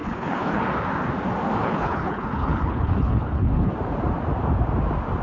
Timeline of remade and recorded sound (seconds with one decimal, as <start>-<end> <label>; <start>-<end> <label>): 0.0-0.6 remade; 0.6-1.6 recorded; 1.6-3.7 remade; 3.7-5.2 recorded